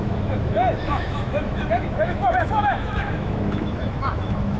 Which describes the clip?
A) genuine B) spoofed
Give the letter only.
B